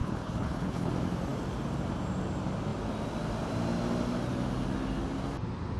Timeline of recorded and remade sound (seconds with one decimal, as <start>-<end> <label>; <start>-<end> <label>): 0.0-0.9 remade; 0.9-5.8 recorded

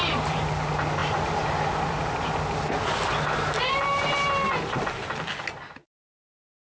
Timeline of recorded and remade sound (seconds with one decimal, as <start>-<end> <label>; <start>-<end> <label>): 0.0-6.8 recorded

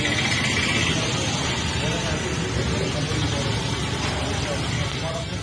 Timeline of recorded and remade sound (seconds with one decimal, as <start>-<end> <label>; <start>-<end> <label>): 0.0-5.4 recorded

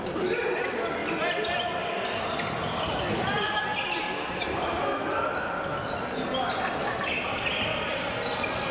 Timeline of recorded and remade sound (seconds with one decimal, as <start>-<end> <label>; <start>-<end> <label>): 0.0-8.7 recorded